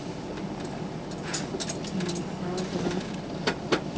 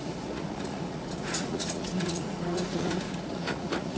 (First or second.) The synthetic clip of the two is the second